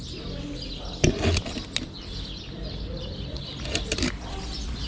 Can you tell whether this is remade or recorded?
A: recorded